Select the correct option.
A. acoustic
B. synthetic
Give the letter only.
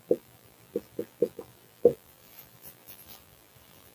B